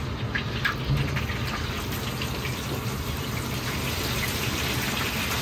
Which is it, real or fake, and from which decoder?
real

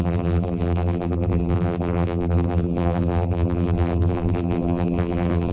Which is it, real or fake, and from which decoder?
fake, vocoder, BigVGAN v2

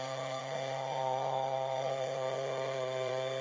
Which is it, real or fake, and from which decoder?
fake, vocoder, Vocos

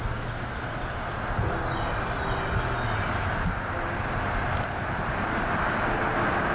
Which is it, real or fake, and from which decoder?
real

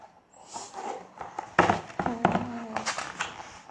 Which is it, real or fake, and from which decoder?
real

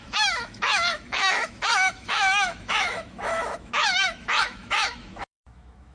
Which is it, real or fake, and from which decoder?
fake, autoencoder, DAC-VAE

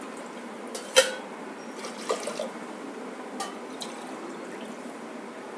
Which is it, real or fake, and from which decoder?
real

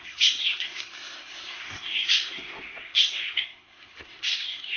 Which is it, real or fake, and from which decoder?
fake, codec, SNAC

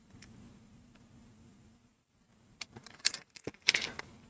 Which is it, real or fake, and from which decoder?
fake, vocoder, BigVGAN v2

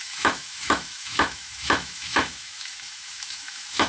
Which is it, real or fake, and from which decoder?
fake, autoencoder, DAC-VAE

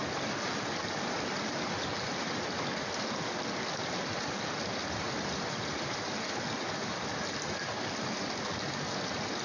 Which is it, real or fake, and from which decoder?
real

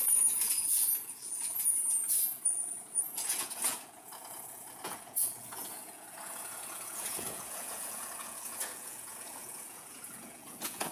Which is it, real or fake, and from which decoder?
fake, vocoder, Vocos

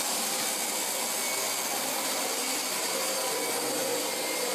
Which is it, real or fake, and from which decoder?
real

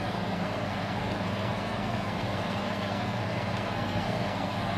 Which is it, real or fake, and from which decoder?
fake, codec, SNAC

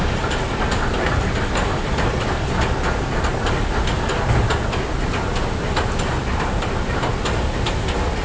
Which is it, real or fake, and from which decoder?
real